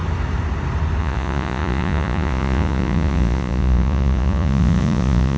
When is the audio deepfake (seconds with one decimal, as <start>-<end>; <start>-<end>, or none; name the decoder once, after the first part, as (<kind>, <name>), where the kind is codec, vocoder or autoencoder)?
1.0-5.4 (vocoder, Vocos)